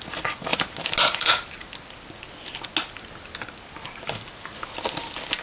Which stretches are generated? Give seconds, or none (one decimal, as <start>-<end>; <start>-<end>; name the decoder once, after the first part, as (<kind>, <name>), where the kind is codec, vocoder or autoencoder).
none